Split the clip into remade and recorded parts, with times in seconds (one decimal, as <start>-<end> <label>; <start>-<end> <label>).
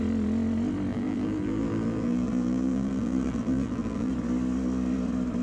0.0-0.9 recorded; 0.9-4.1 remade; 4.1-5.4 recorded